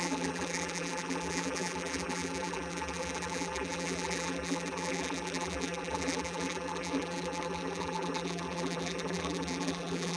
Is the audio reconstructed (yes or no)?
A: yes